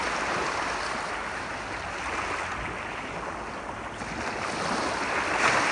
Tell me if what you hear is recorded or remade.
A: recorded